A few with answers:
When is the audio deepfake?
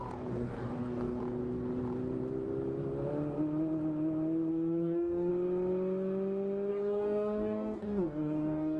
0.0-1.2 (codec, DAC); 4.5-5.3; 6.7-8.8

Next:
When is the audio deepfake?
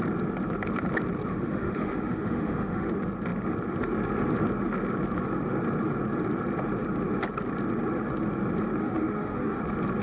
1.3-2.9 (autoencoder, DAC-VAE); 8.8-9.6